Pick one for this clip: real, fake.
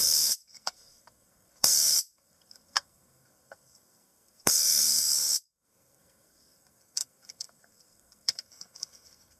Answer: fake